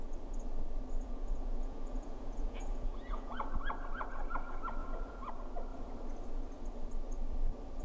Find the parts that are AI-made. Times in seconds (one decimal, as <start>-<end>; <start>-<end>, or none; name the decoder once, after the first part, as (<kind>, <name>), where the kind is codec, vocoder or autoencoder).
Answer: 1.0-3.3 (vocoder, Vocos); 4.8-5.3